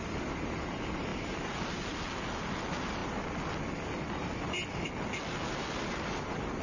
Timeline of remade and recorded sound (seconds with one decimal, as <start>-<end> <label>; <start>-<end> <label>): 0.0-6.6 recorded